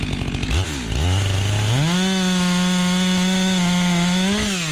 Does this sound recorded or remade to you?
recorded